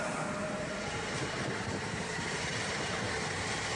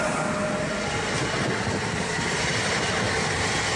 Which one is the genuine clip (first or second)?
second